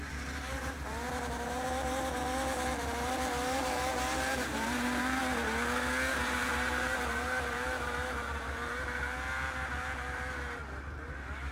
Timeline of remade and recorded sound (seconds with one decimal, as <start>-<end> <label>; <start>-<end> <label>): 0.0-5.2 remade; 5.2-6.1 recorded; 6.1-11.5 remade